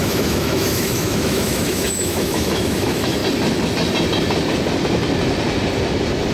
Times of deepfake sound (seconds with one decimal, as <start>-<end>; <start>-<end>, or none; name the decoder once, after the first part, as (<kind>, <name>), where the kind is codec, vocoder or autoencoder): 0.0-3.2 (autoencoder, DAC-VAE)